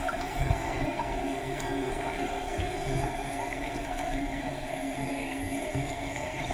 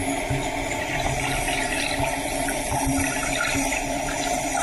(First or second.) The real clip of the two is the second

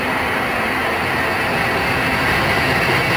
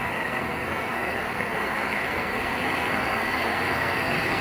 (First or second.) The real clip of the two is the first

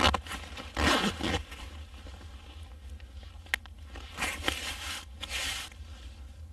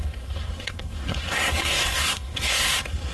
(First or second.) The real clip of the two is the first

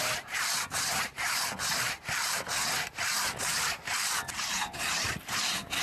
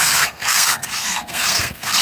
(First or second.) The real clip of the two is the first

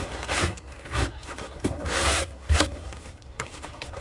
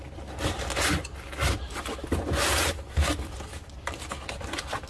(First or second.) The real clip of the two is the second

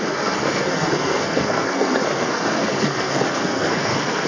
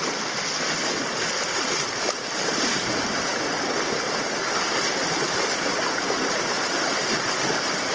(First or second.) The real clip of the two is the second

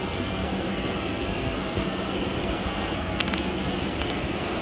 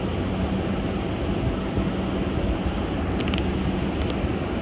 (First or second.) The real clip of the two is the second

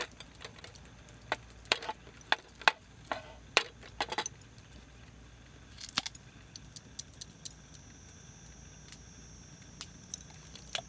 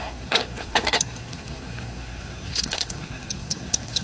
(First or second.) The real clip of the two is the first